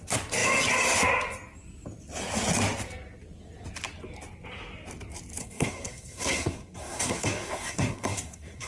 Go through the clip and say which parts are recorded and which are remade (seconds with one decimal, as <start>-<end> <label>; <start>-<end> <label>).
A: 0.0-5.4 recorded; 5.4-8.7 remade